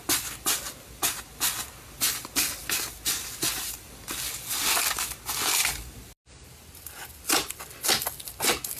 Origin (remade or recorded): recorded